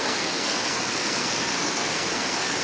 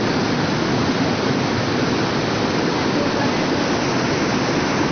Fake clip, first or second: first